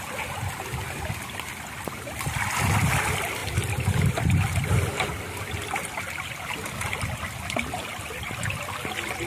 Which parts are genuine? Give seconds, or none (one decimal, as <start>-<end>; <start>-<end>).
0.0-9.3